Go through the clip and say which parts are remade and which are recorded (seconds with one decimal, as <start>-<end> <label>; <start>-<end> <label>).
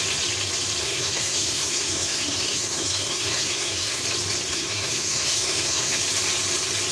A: 0.0-0.8 recorded; 0.8-4.0 remade; 4.0-4.5 recorded; 4.5-6.0 remade; 6.0-6.9 recorded